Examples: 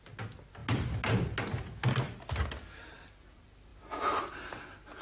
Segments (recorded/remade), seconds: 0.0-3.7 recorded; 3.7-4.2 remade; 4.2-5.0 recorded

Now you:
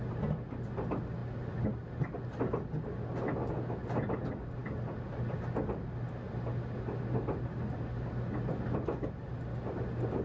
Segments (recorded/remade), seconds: 0.0-10.2 recorded

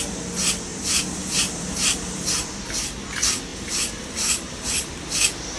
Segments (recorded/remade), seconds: 0.0-0.7 recorded; 0.7-2.4 remade; 2.4-3.5 recorded; 3.5-4.9 remade; 4.9-5.6 recorded

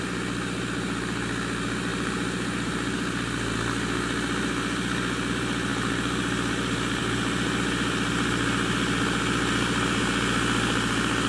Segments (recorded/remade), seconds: 0.0-5.7 recorded; 5.7-6.5 remade; 6.5-7.0 recorded; 7.0-10.0 remade; 10.0-11.3 recorded

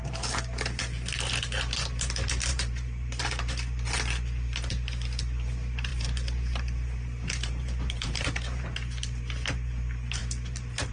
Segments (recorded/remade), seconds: 0.0-2.5 recorded; 2.5-3.2 remade; 3.2-5.9 recorded; 5.9-8.9 remade; 8.9-10.2 recorded; 10.2-10.9 remade